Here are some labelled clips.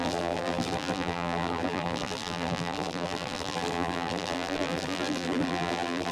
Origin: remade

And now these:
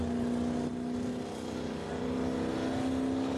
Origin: recorded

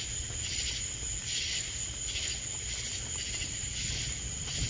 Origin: recorded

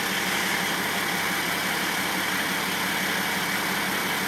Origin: recorded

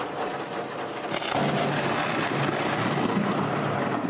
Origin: recorded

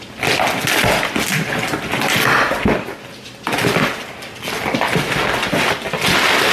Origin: recorded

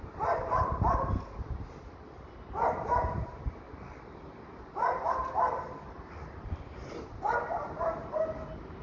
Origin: recorded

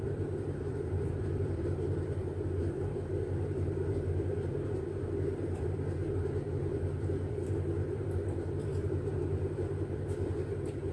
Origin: remade